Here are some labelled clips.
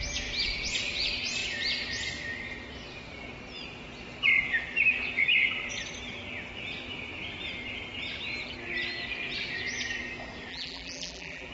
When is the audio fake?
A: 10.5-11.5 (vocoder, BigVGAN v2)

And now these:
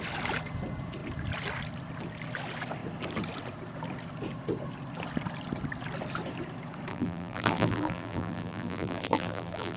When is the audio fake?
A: 6.9-9.8 (vocoder, BigVGAN v2)

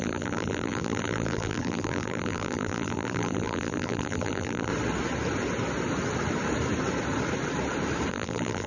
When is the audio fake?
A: 0.0-4.7 (vocoder, BigVGAN v2); 8.1-8.7

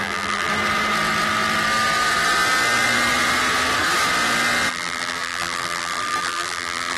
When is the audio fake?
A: 0.0-0.5 (vocoder, BigVGAN v2); 4.7-7.0

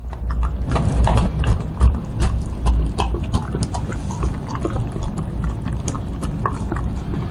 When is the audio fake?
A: 0.9-7.3 (vocoder, BigVGAN v2)